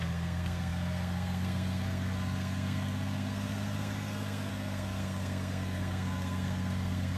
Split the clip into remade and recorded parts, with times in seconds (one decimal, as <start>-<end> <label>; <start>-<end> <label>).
0.0-7.2 remade